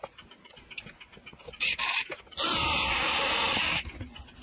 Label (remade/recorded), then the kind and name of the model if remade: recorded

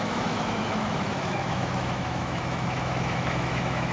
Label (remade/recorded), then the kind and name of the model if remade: remade, autoencoder, DAC-VAE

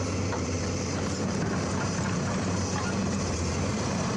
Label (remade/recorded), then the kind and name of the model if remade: remade, vocoder, BigVGAN v2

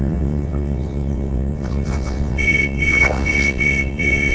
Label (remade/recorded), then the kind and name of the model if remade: remade, vocoder, WaveNeXt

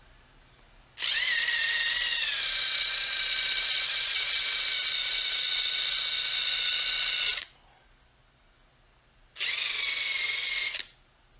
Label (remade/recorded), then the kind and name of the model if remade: recorded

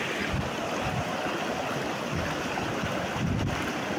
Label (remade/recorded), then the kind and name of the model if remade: recorded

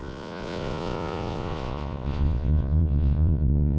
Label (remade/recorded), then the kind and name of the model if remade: remade, vocoder, Vocos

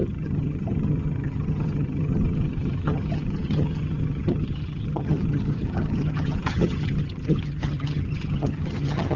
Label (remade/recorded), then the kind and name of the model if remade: remade, vocoder, HiFi-GAN